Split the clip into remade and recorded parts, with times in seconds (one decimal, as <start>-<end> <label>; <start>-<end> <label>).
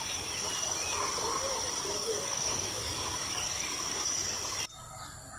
0.0-2.0 recorded; 2.0-4.2 remade; 4.2-5.4 recorded